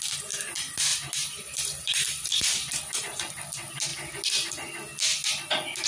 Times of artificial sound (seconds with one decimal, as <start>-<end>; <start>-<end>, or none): 0.9-3.3

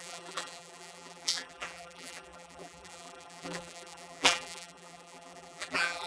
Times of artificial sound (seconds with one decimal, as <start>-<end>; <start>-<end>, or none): 0.0-6.1

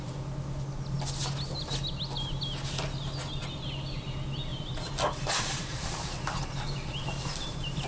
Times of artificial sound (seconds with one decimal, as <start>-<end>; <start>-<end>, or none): 4.5-7.9

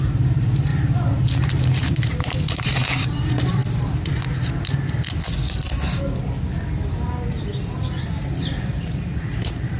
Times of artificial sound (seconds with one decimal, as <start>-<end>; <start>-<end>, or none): 0.0-0.7; 1.7-3.6; 8.4-9.8